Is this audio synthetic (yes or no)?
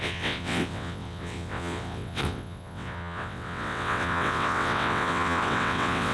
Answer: yes